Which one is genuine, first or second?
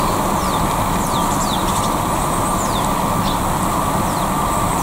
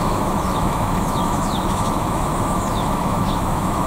first